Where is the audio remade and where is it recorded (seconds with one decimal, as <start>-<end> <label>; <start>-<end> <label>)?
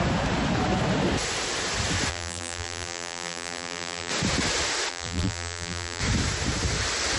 0.0-2.1 recorded; 2.1-4.1 remade; 4.1-4.9 recorded; 4.9-6.0 remade; 6.0-7.2 recorded